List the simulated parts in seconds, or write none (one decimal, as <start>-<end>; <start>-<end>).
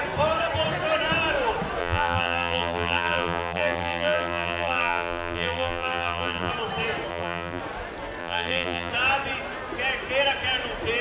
1.8-6.5; 7.1-7.6; 8.2-8.9